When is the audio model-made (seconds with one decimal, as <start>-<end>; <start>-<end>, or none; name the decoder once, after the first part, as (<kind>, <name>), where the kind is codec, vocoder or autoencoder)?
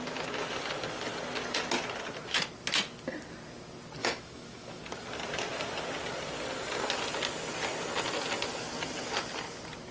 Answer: 4.0-4.8 (autoencoder, DAC-VAE)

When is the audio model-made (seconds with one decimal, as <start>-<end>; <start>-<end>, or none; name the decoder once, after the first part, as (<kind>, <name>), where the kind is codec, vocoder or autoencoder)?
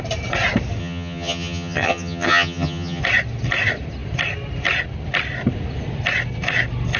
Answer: 0.8-3.0 (vocoder, HiFi-GAN)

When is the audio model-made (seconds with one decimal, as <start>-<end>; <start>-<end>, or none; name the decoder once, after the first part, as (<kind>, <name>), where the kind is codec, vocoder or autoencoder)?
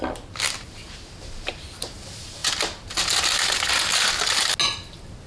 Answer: none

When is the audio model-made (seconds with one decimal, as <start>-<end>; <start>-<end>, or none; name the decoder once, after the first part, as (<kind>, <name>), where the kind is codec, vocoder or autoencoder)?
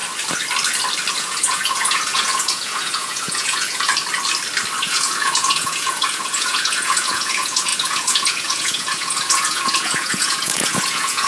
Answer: 1.1-3.9 (vocoder, Vocos); 4.8-11.3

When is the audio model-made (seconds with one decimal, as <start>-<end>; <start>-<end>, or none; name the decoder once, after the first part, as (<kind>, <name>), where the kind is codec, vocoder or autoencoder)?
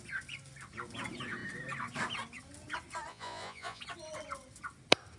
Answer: 3.1-3.8 (vocoder, Vocos)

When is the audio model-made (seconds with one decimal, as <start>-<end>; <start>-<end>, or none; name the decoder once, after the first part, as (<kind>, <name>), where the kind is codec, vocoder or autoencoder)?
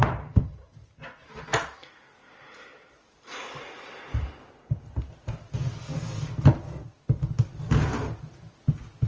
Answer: none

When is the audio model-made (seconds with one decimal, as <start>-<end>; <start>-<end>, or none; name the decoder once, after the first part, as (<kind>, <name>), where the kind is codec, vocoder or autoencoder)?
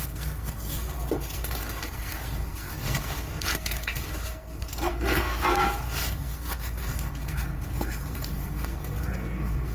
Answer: 0.0-9.7 (codec, SNAC)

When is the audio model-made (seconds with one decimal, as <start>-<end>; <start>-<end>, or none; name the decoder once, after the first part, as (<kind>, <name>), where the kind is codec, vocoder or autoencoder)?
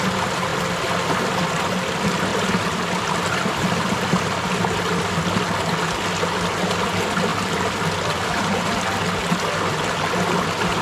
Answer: 2.3-4.6 (vocoder, BigVGAN v2); 7.3-8.4